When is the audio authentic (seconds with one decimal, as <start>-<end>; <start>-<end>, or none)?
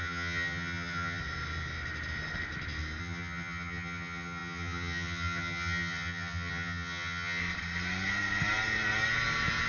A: 1.2-3.0; 7.4-9.7